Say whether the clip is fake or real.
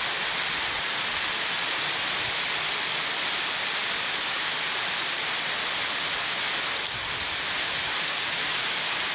real